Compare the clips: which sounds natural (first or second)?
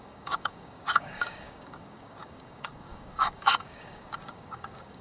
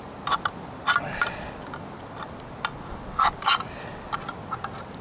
second